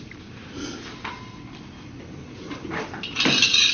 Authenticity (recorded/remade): recorded